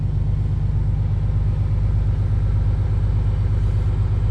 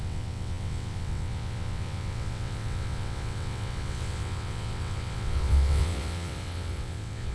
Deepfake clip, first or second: second